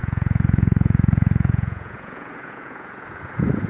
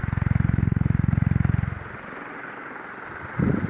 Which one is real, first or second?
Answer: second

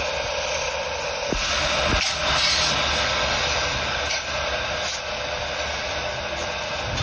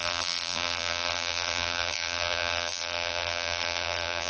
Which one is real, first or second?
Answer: first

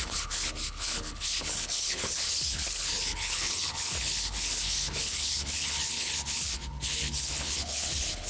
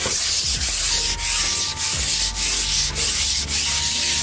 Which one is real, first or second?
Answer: second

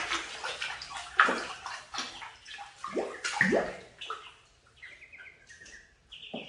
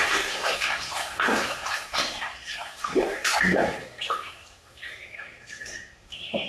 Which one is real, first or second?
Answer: first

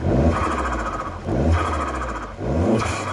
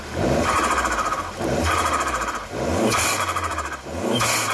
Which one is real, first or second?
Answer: first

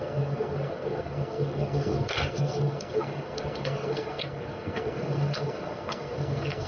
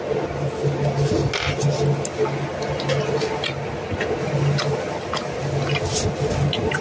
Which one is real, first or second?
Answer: second